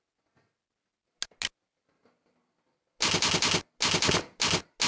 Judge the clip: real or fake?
real